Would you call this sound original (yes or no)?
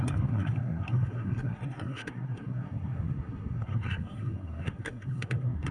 no